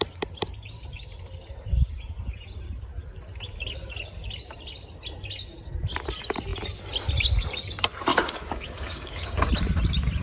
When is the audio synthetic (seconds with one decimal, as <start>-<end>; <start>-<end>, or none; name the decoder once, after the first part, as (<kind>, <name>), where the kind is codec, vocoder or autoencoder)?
8.1-9.5 (codec, DAC)